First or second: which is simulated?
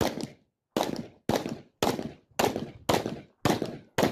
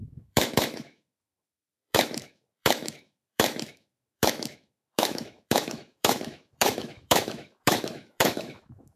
second